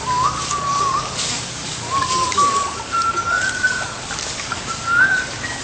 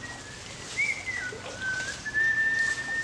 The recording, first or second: second